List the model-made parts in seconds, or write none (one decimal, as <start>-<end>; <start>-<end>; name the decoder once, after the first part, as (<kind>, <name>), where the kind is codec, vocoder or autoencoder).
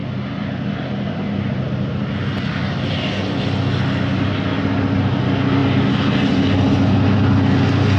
none